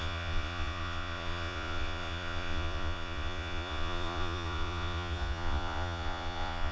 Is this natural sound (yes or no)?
no